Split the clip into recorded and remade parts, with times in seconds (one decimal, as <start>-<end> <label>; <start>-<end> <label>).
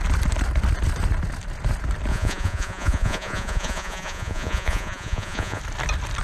0.0-2.1 recorded; 2.1-5.6 remade; 5.6-6.2 recorded